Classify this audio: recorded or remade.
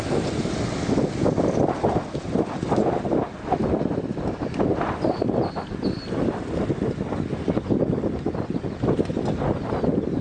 recorded